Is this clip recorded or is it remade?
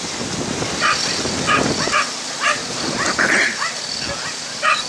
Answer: recorded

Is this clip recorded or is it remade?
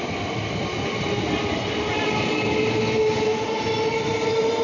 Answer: recorded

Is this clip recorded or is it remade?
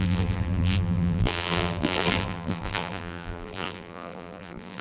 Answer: remade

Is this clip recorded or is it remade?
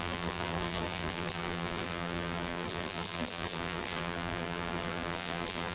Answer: remade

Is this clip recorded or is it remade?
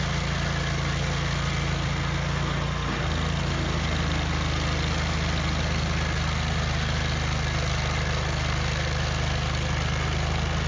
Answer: recorded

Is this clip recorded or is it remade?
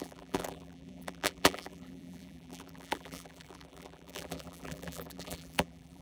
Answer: remade